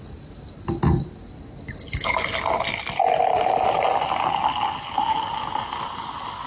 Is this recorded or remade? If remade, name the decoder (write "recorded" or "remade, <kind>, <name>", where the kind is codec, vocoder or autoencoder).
recorded